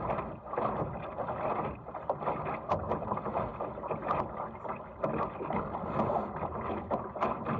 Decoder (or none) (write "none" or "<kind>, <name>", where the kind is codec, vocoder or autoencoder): none